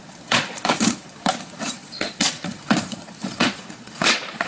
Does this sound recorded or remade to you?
remade